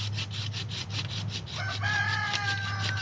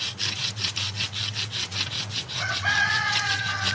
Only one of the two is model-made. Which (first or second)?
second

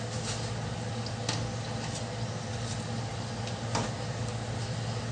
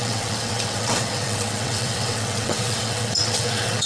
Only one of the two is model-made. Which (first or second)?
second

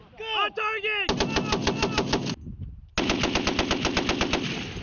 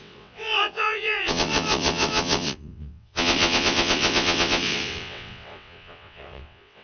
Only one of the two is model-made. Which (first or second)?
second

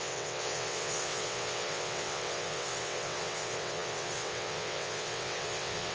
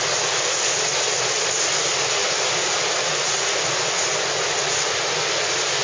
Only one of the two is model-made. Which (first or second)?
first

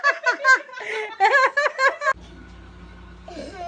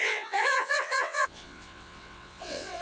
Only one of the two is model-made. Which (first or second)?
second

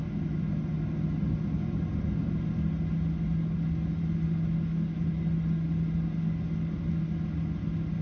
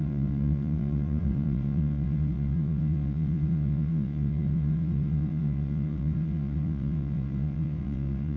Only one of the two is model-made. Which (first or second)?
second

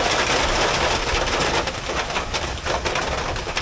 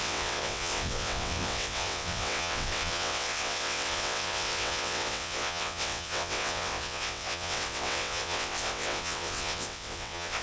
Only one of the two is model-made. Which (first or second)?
second